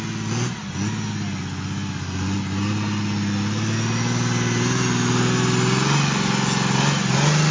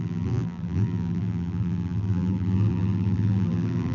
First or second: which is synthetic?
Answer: second